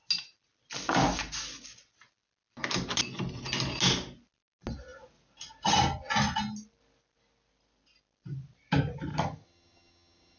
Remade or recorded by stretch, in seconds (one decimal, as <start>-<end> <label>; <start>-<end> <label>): 0.0-9.1 recorded; 9.1-10.4 remade